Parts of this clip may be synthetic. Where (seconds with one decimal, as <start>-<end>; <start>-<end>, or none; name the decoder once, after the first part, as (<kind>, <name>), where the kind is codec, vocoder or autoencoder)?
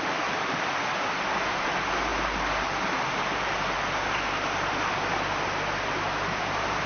none